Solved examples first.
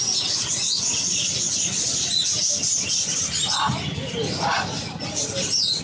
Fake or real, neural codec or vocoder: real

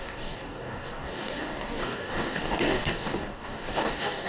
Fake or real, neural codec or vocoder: fake, codec, DAC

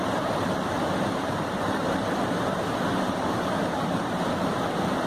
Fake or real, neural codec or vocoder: fake, vocoder, BigVGAN v2